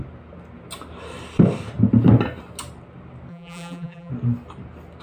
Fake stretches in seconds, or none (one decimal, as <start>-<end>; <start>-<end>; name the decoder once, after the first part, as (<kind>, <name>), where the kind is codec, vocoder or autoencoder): 3.3-4.1 (vocoder, BigVGAN v2)